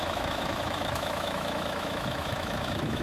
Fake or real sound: fake